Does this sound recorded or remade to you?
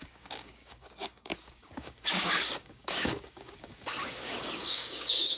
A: remade